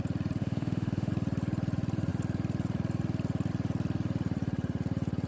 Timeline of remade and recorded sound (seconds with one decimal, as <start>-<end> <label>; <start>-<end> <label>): 0.0-0.4 recorded; 0.4-1.1 remade; 1.1-5.3 recorded